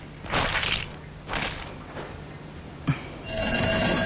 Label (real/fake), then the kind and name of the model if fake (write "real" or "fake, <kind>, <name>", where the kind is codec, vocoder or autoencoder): real